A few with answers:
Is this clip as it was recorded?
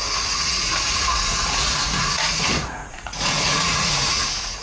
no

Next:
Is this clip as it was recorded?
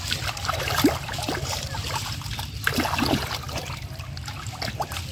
yes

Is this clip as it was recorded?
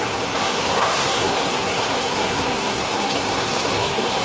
no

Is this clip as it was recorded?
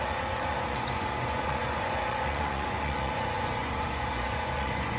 no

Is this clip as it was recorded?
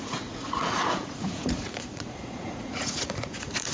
no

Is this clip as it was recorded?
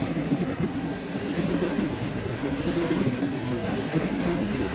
no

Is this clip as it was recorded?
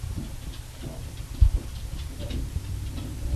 yes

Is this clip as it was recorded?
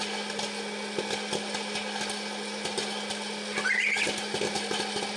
yes